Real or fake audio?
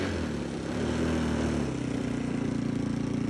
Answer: real